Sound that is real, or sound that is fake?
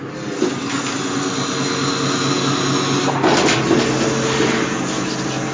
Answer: real